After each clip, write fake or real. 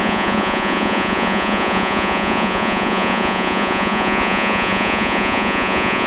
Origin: fake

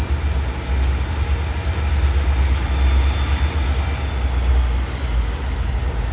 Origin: real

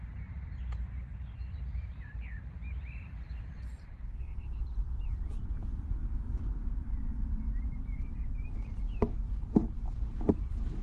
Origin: fake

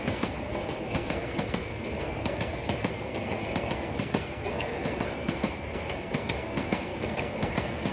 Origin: fake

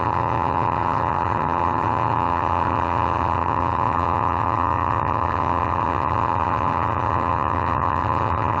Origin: fake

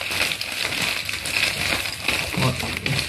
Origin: real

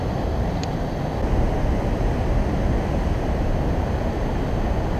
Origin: real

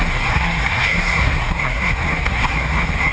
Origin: fake